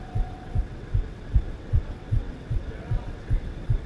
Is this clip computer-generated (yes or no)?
yes